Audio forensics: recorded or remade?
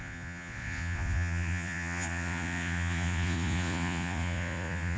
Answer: remade